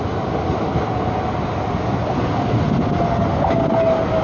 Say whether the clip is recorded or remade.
recorded